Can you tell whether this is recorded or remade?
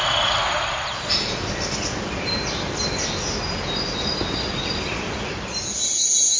recorded